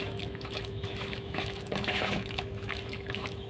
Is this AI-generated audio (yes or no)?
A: yes